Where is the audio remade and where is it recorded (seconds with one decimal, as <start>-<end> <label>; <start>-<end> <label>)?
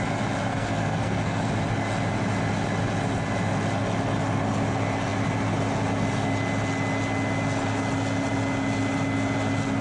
0.0-0.5 recorded; 0.5-1.5 remade; 1.5-9.8 recorded